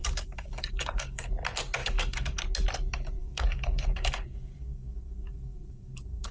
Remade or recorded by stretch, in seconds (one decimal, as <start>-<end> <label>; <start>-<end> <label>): 0.0-1.3 remade; 1.3-1.8 recorded; 1.8-2.4 remade; 2.4-3.2 recorded; 3.2-6.3 remade